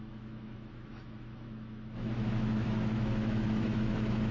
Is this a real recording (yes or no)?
no